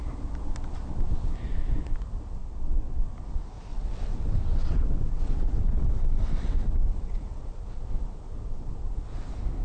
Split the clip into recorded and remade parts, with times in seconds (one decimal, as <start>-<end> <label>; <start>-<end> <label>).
0.0-2.4 recorded; 2.4-3.0 remade; 3.0-3.7 recorded; 3.7-7.6 remade; 7.6-9.6 recorded